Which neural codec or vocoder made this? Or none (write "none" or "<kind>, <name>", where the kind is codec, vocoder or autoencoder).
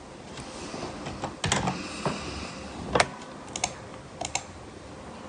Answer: none